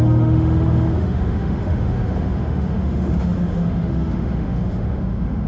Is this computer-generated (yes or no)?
yes